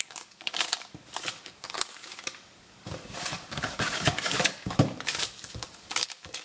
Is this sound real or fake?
fake